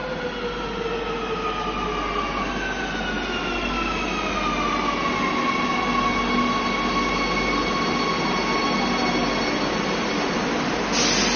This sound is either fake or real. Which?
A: real